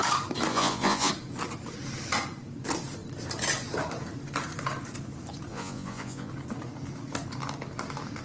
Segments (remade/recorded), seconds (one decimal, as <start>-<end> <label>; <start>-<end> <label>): 0.0-0.5 recorded; 0.5-1.1 remade; 1.1-5.5 recorded; 5.5-6.3 remade; 6.3-8.2 recorded